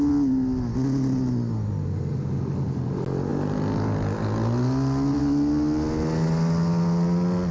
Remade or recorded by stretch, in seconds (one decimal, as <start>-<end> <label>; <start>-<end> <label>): 0.0-7.5 recorded